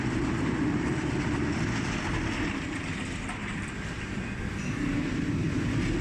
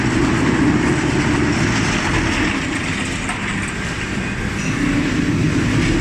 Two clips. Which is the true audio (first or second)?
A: second